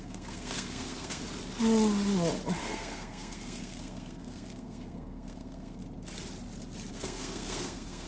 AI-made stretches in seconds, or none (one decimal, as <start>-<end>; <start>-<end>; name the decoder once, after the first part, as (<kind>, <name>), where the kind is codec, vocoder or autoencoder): 0.0-1.2 (codec, SNAC); 2.6-5.8; 6.9-8.1